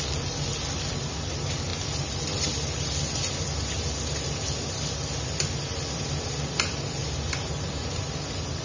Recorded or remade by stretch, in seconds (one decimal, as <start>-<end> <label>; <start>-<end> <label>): 0.0-7.0 recorded; 7.0-8.6 remade